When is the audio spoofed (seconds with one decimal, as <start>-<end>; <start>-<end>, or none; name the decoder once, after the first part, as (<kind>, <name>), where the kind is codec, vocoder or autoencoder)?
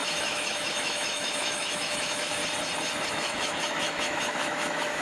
0.0-2.4 (autoencoder, DAC-VAE); 3.1-5.0